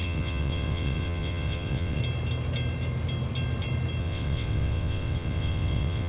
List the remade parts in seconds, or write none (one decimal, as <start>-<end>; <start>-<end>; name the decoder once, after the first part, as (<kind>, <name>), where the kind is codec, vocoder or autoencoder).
0.0-2.0 (vocoder, WaveNeXt); 4.0-6.1